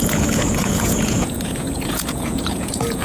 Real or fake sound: fake